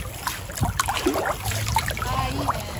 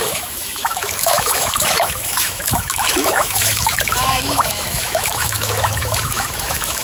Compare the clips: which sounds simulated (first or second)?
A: second